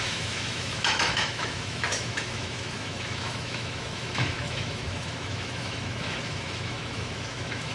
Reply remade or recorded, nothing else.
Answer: remade